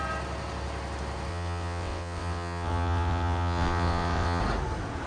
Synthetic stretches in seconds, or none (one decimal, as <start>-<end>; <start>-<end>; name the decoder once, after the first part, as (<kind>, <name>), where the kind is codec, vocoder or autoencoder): 1.3-4.4 (vocoder, WaveNeXt)